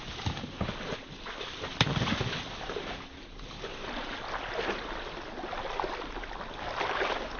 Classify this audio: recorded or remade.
recorded